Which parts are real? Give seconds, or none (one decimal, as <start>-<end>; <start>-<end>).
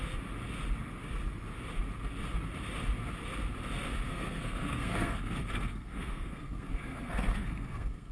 0.0-4.1